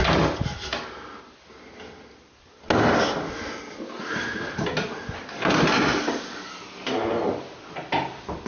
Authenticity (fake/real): real